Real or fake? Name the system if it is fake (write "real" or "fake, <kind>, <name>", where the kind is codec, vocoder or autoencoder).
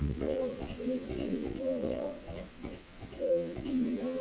fake, vocoder, Vocos